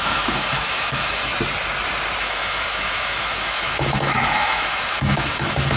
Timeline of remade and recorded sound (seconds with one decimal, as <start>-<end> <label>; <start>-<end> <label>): 0.0-1.3 remade; 1.3-2.2 recorded; 2.2-5.8 remade